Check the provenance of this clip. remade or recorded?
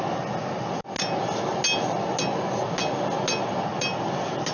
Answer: recorded